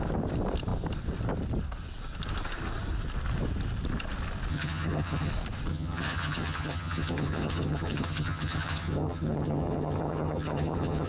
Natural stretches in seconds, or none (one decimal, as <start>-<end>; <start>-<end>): 0.0-4.5; 5.3-5.7